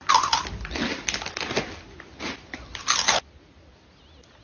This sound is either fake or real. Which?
real